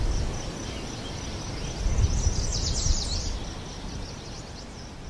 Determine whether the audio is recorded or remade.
recorded